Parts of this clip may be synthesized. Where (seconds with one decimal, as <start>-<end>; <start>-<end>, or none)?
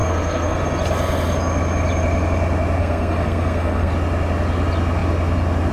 0.0-0.6; 2.8-3.9